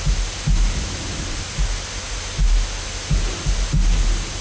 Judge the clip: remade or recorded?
recorded